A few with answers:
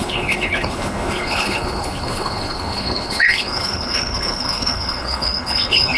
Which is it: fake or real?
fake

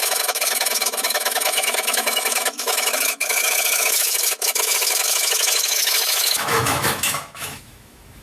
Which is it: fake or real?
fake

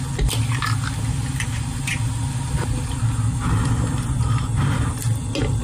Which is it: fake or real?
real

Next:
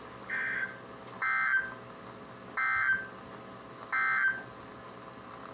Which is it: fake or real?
real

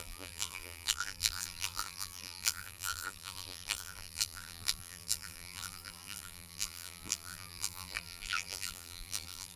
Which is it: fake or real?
fake